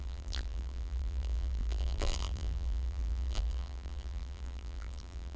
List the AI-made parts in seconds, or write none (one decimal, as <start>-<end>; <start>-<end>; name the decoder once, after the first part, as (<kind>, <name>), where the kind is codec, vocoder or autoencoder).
0.0-5.4 (vocoder, BigVGAN v2)